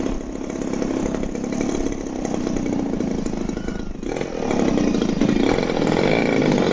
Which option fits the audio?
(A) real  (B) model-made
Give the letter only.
A